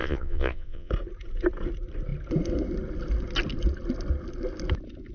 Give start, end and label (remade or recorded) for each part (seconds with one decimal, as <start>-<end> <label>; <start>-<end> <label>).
0.0-0.9 remade; 0.9-5.1 recorded